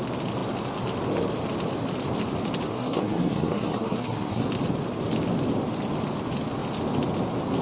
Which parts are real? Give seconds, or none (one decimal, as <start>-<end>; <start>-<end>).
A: 0.0-2.7; 4.4-7.6